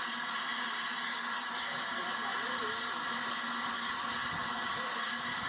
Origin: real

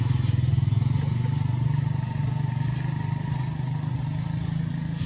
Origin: real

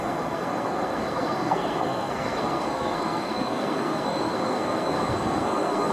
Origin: fake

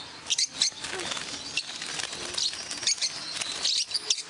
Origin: real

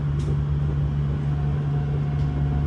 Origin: real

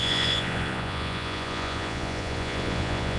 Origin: fake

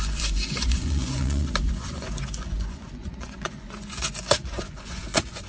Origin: fake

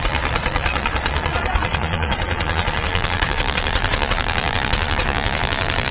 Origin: fake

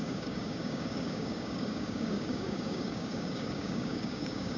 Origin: fake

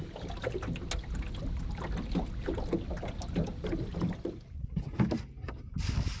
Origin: real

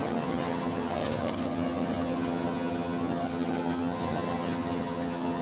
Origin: fake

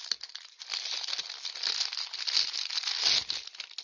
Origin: real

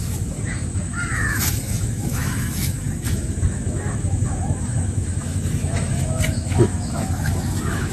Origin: fake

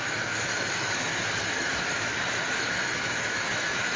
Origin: fake